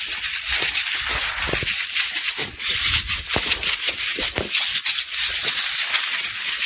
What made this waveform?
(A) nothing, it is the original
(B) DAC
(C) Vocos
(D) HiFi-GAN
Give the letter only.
A